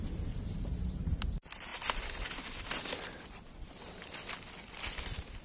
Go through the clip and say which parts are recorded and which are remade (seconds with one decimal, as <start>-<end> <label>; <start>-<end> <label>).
0.0-5.4 recorded